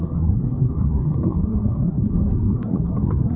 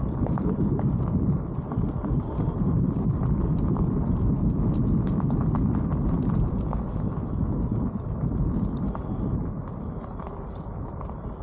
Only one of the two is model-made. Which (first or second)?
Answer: first